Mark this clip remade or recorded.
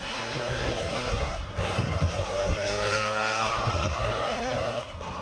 remade